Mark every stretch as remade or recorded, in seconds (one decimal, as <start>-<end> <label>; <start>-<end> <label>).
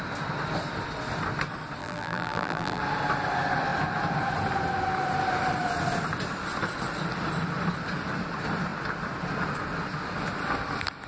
0.0-1.8 recorded; 1.8-2.8 remade; 2.8-11.1 recorded